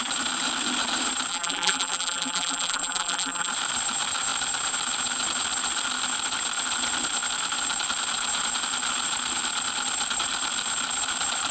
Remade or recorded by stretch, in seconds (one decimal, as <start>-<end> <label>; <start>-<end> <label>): 0.0-1.3 recorded; 1.3-3.5 remade; 3.5-11.5 recorded